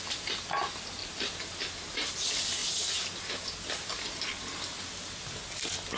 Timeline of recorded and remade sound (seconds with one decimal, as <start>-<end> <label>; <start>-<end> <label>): 0.0-6.0 recorded